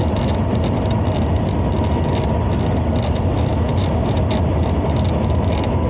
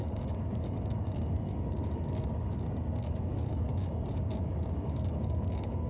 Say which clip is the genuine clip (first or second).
first